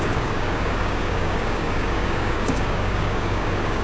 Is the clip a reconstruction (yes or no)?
yes